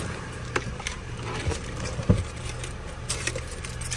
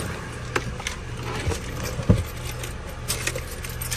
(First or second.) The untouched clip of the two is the second